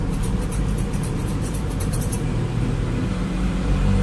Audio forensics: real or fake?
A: fake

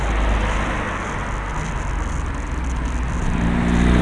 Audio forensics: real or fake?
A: real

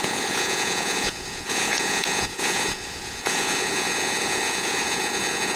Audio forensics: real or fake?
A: fake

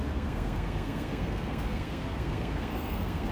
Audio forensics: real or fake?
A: fake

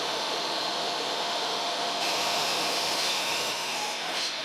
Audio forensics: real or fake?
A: fake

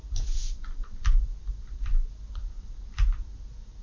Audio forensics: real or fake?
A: fake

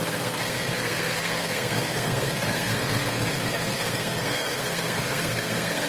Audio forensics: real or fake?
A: fake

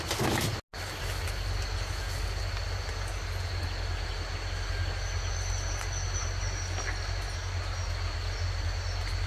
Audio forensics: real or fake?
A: real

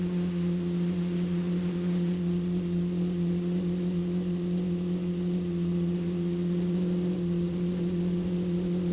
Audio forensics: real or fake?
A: real